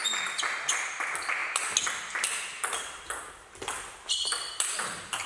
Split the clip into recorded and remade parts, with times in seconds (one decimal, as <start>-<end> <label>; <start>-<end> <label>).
0.0-0.9 recorded; 0.9-1.4 remade; 1.4-4.6 recorded; 4.6-5.3 remade